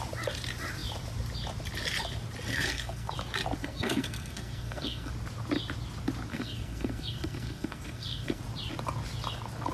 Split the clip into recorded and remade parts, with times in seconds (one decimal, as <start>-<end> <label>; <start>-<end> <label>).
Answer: 0.0-2.5 recorded; 2.5-3.1 remade; 3.1-3.6 recorded; 3.6-5.1 remade; 5.1-6.3 recorded; 6.3-8.4 remade; 8.4-9.7 recorded